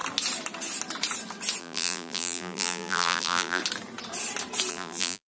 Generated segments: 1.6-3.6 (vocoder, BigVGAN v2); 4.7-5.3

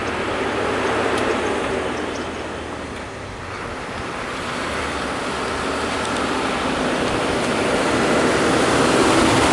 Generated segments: none